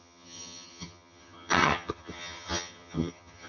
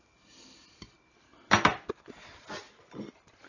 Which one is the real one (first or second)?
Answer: second